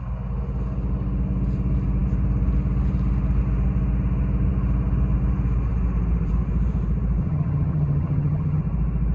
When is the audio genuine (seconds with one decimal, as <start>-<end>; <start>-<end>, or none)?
0.0-7.2; 8.6-9.1